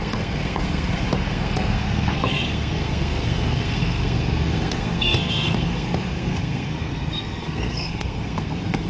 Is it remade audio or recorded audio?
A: remade